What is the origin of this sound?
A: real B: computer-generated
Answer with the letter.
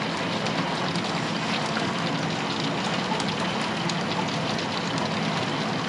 A